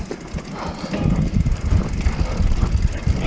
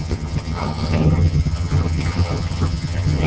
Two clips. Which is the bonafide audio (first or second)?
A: first